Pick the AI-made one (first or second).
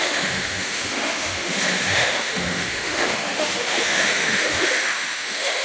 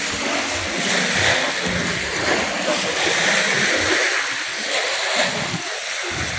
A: first